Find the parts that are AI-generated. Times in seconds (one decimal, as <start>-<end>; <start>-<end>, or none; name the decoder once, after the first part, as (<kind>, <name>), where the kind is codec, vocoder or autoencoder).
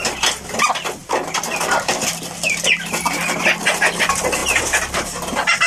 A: 1.0-3.5 (vocoder, BigVGAN v2)